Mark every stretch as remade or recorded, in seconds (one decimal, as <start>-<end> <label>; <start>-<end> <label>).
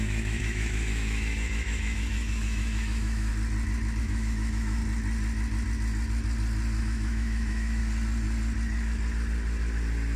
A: 0.0-3.3 remade; 3.3-4.0 recorded; 4.0-4.8 remade; 4.8-6.8 recorded; 6.8-7.8 remade; 7.8-10.2 recorded